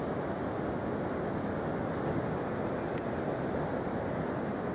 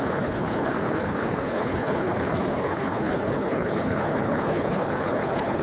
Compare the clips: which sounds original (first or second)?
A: first